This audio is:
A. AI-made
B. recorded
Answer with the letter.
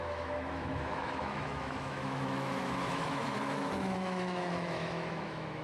A